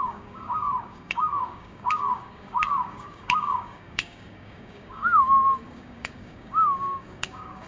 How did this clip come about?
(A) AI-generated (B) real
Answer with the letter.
A